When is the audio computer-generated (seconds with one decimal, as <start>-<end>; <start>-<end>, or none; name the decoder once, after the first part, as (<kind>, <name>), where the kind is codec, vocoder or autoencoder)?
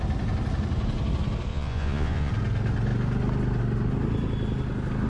1.5-2.3 (vocoder, Vocos)